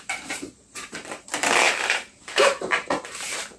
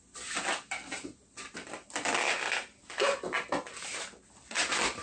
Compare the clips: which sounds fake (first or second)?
first